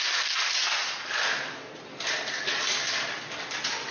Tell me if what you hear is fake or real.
real